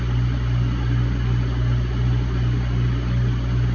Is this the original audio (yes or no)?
yes